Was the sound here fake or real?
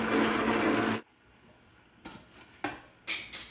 real